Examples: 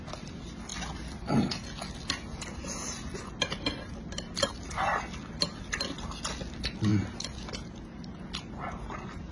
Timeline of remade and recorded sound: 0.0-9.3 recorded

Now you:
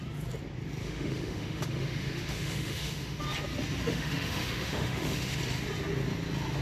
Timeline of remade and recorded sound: 0.0-0.8 recorded; 0.8-3.2 remade; 3.2-3.9 recorded; 3.9-5.4 remade; 5.4-6.6 recorded

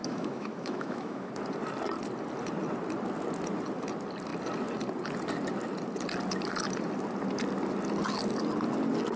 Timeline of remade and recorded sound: 0.0-1.3 remade; 1.3-9.2 recorded

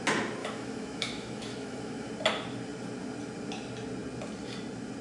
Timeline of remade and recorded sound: 0.0-0.4 recorded; 0.4-2.1 remade; 2.1-5.0 recorded

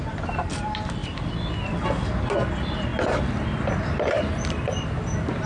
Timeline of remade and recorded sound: 0.0-5.5 recorded

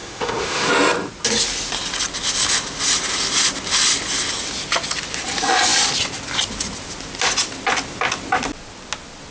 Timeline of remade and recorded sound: 0.0-0.7 remade; 0.7-9.3 recorded

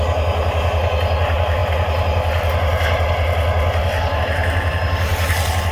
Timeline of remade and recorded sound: 0.0-5.7 recorded

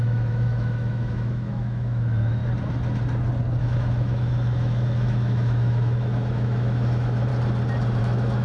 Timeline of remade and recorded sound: 0.0-2.4 remade; 2.4-3.6 recorded; 3.6-7.3 remade; 7.3-8.0 recorded; 8.0-8.4 remade